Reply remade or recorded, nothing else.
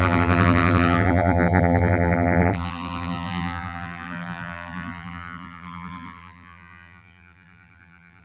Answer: remade